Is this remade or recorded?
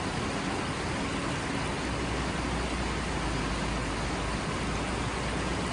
recorded